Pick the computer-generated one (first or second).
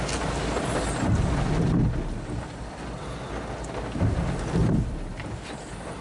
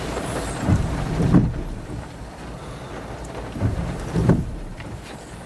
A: second